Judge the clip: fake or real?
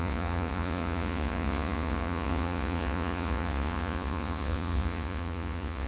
fake